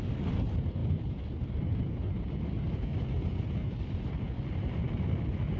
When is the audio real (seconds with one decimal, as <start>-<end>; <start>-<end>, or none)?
0.0-5.6